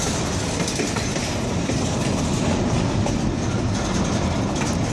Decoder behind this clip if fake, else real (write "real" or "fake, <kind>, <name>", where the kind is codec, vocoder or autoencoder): real